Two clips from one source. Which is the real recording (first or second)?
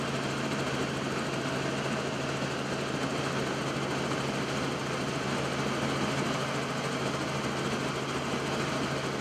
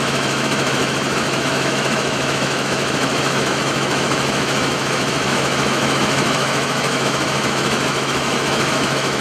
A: first